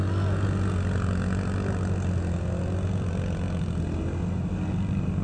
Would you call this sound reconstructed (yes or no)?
no